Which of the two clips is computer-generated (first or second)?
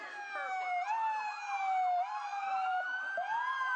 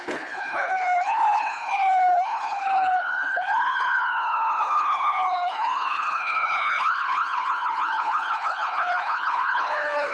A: second